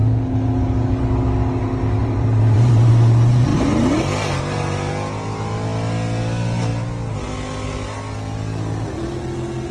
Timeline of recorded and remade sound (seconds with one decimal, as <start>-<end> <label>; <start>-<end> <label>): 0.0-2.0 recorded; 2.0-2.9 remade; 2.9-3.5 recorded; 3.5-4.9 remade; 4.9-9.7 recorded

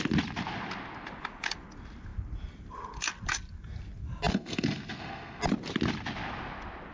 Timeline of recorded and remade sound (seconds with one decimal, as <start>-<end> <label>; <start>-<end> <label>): 0.0-4.3 recorded; 4.3-5.4 remade; 5.4-6.9 recorded

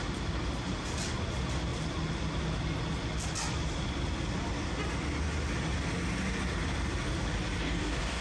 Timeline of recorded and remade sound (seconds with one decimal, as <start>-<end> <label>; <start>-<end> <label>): 0.0-7.6 recorded; 7.6-8.2 remade

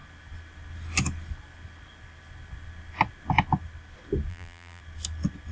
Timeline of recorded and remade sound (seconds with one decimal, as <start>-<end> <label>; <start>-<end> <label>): 0.0-4.3 recorded; 4.3-4.8 remade; 4.8-5.5 recorded